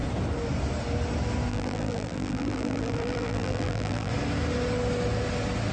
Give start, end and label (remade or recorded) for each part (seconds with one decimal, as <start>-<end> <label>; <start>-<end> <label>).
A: 0.0-1.5 recorded; 1.5-4.1 remade; 4.1-5.7 recorded